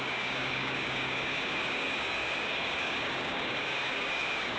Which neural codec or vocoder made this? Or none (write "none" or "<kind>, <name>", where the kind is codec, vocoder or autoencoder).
codec, DAC